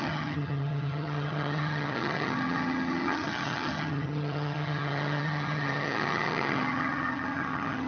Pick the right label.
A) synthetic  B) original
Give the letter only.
A